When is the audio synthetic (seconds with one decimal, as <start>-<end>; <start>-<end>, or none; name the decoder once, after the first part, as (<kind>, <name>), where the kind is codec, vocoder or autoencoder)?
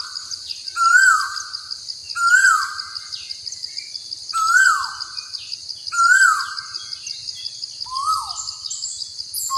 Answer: none